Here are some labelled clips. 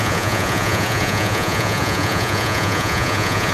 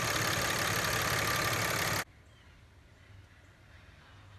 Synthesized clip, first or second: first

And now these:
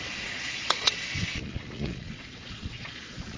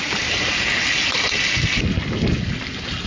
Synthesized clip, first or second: first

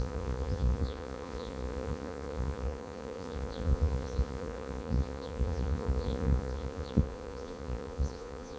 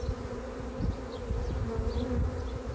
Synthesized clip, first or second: first